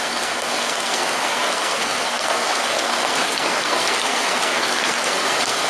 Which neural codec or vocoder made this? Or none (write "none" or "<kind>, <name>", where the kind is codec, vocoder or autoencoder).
codec, SNAC